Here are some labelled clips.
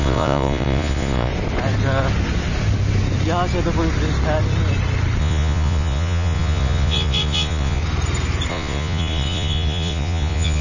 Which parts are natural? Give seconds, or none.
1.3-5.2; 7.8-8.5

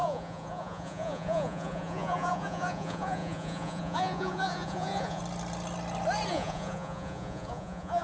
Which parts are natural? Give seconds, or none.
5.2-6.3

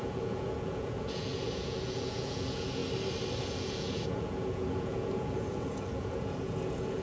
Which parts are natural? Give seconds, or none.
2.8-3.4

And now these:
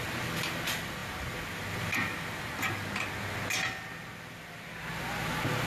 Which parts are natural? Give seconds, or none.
0.0-5.7

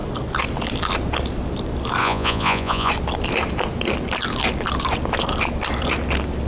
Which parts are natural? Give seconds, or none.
0.0-2.0; 2.9-6.5

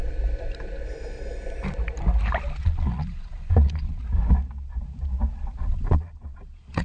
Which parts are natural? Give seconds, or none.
0.0-2.6; 4.0-5.6

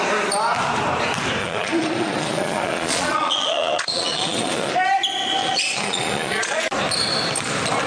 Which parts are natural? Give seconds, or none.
0.0-1.4; 4.7-5.4; 6.6-7.9

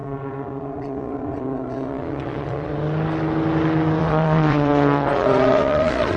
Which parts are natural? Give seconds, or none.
2.7-4.0